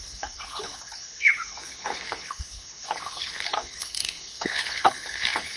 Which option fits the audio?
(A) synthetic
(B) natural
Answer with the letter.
A